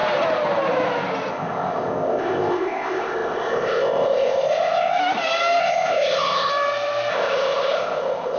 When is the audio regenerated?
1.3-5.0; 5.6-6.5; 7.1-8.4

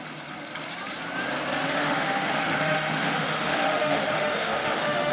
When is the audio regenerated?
1.6-5.1

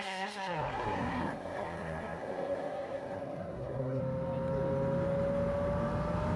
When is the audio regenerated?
0.0-4.0

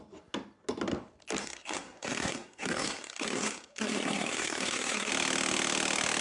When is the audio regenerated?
1.4-5.1

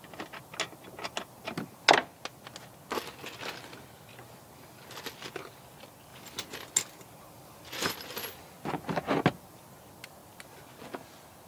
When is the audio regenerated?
none

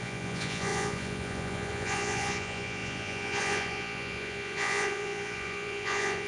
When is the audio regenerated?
0.0-6.3